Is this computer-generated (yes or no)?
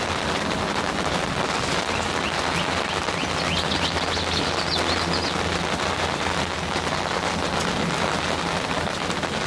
no